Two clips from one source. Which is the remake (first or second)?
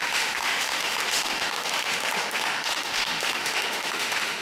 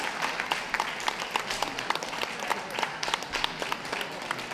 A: first